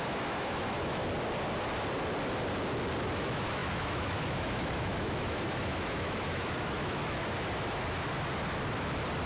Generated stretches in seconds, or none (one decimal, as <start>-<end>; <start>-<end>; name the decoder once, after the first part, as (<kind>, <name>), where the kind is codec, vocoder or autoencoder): 0.0-1.0 (autoencoder, DAC-VAE); 3.2-7.2